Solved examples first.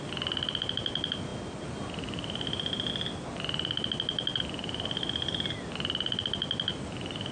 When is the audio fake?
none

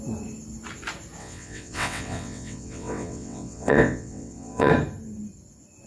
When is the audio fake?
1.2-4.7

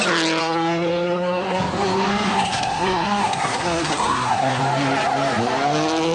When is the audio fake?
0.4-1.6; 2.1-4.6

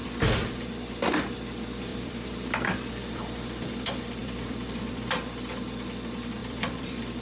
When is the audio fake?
1.9-3.7; 4.2-5.1; 6.4-7.2

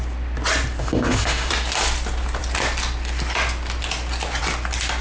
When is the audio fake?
0.8-1.5

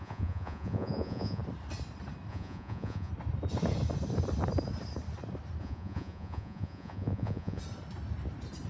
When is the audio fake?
0.0-1.4; 2.3-3.1; 5.6-7.6